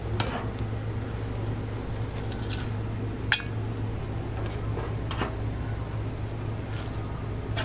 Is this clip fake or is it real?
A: real